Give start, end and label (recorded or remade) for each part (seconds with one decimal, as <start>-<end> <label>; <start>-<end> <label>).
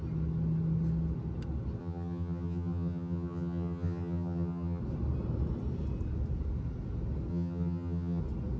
0.0-1.8 recorded; 1.8-4.8 remade; 4.8-7.3 recorded; 7.3-8.2 remade; 8.2-8.6 recorded